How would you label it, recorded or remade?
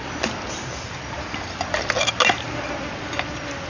recorded